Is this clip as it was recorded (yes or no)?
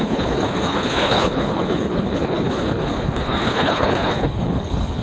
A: no